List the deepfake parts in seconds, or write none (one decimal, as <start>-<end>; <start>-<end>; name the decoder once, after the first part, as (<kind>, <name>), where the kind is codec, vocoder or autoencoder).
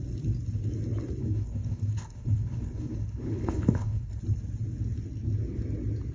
1.2-4.2 (codec, HILCodec)